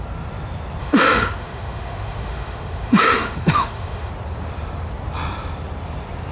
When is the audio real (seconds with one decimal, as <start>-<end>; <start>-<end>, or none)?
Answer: 0.0-0.8; 4.1-6.3